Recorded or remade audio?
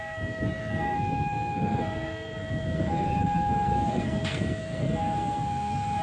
remade